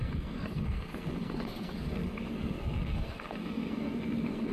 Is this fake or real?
fake